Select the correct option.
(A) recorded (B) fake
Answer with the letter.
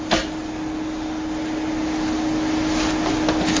A